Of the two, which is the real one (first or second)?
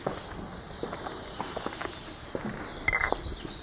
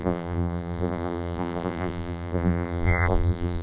first